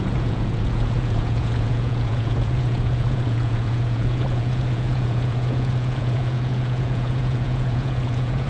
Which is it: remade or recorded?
remade